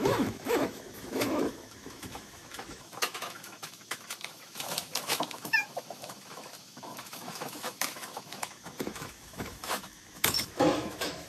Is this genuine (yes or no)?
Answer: no